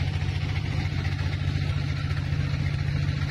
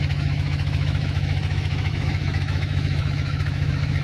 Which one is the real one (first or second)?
first